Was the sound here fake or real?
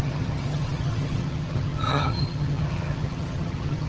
fake